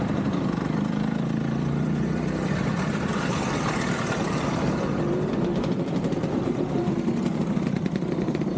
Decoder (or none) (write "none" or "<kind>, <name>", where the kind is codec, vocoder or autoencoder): vocoder, BigVGAN v2